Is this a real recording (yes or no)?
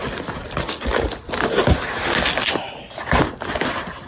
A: yes